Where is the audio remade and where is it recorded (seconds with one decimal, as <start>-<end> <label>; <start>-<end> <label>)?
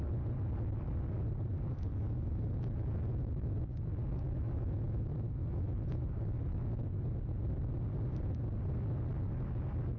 0.0-1.9 recorded; 1.9-7.0 remade; 7.0-10.0 recorded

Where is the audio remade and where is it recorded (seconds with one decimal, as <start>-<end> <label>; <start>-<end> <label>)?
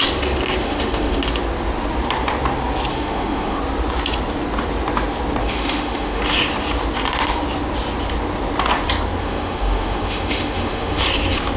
0.0-0.6 recorded; 0.6-1.2 remade; 1.2-2.9 recorded; 2.9-3.6 remade; 3.6-5.4 recorded; 5.4-6.2 remade; 6.2-9.2 recorded; 9.2-11.0 remade; 11.0-11.6 recorded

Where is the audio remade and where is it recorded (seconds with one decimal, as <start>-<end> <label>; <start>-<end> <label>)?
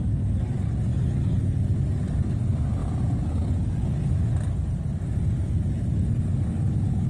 0.0-7.1 recorded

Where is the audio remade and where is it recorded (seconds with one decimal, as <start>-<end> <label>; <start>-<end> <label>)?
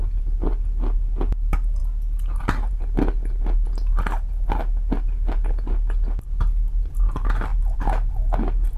0.0-8.8 recorded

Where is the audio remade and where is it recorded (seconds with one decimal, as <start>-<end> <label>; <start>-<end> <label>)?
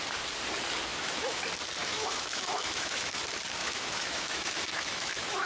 0.0-0.9 recorded; 0.9-1.4 remade; 1.4-1.8 recorded; 1.8-3.2 remade; 3.2-3.6 recorded; 3.6-5.5 remade